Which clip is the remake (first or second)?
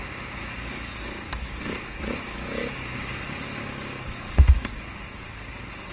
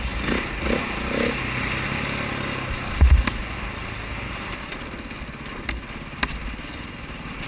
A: first